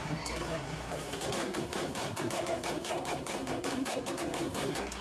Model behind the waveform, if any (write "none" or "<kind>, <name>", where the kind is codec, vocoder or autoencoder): codec, SNAC